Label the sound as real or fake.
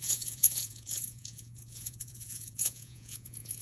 fake